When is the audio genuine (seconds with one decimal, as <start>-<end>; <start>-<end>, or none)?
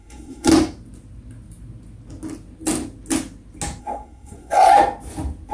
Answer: 0.5-3.8; 4.7-5.5